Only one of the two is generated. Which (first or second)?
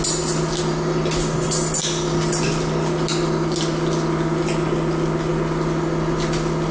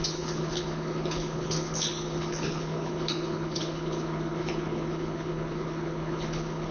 second